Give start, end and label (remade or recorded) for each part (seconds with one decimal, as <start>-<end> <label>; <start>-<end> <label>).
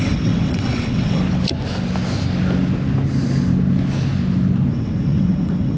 0.0-1.2 remade; 1.2-4.7 recorded; 4.7-5.8 remade